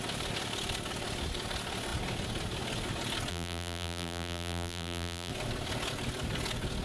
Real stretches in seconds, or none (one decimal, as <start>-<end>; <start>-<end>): 0.0-3.3; 5.3-6.8